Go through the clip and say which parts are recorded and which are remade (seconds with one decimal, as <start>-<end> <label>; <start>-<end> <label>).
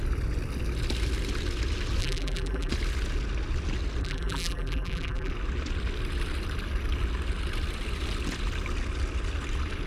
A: 0.0-2.0 recorded; 2.0-2.7 remade; 2.7-4.0 recorded; 4.0-5.3 remade; 5.3-9.9 recorded